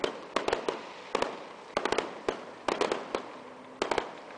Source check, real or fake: real